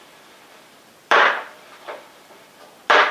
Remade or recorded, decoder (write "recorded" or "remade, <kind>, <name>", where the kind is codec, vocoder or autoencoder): remade, vocoder, BigVGAN v2